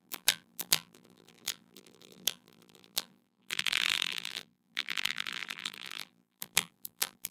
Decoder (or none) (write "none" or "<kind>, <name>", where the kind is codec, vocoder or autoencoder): vocoder, BigVGAN v2